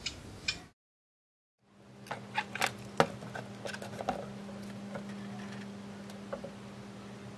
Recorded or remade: recorded